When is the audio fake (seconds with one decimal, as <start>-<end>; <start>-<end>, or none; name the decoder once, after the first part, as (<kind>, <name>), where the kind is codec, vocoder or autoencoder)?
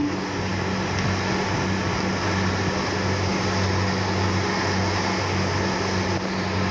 none